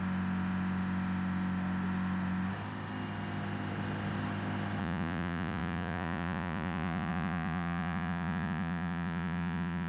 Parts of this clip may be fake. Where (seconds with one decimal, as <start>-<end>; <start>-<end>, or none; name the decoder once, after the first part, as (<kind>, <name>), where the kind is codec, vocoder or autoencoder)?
4.8-9.9 (vocoder, Vocos)